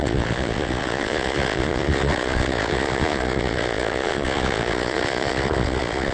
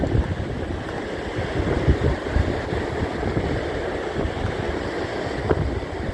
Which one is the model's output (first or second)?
first